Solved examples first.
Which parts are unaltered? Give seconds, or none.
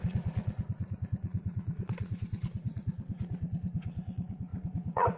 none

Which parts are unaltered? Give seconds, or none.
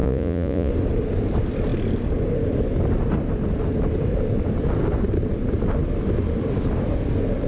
0.7-7.5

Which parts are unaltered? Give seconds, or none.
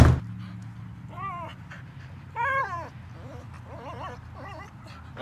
0.0-5.2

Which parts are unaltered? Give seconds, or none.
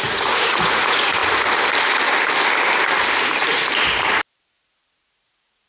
1.2-4.6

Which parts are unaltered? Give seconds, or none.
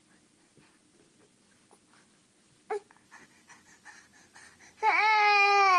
0.0-5.8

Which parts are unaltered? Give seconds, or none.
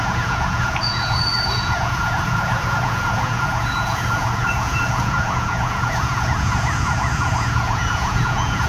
none